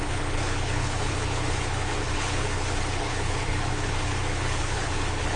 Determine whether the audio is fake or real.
fake